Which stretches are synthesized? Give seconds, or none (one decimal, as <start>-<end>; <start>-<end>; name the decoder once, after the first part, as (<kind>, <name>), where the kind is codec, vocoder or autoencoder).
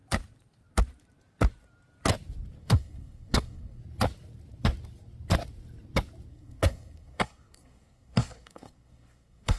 2.6-3.8 (codec, SNAC); 6.3-9.6